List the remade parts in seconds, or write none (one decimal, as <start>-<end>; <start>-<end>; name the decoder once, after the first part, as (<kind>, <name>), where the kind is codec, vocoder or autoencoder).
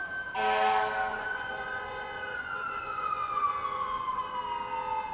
1.1-4.2 (vocoder, Vocos)